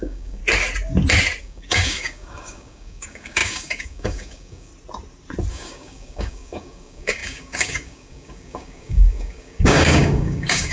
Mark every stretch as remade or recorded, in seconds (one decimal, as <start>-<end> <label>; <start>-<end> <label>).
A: 0.0-0.4 remade; 0.4-1.4 recorded; 1.4-4.7 remade; 4.7-5.5 recorded; 5.5-10.7 remade